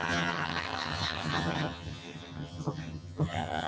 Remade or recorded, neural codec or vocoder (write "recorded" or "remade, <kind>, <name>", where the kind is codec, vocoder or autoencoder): remade, vocoder, HiFi-GAN